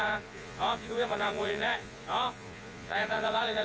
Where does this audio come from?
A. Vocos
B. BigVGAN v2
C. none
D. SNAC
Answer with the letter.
A